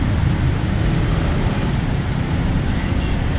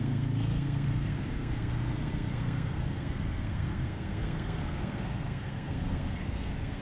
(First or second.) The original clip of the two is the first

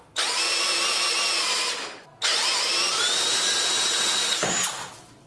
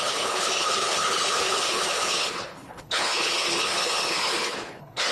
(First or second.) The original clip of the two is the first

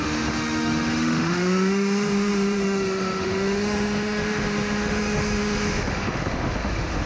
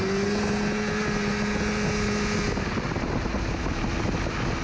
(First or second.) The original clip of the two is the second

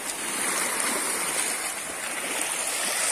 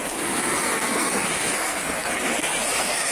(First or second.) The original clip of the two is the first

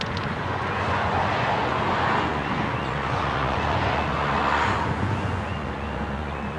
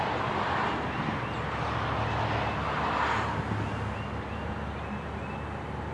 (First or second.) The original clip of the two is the second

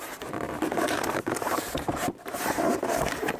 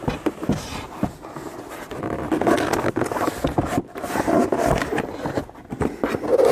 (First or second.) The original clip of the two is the second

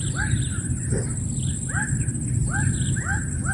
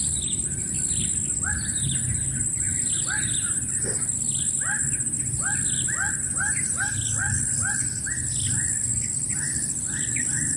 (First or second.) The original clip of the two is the second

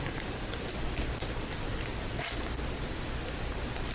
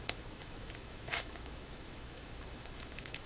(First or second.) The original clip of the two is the first